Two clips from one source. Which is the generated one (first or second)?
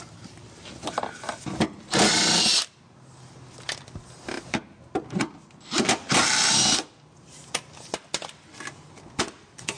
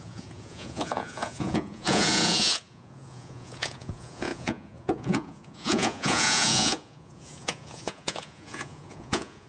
second